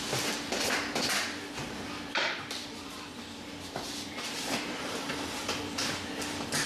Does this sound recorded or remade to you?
remade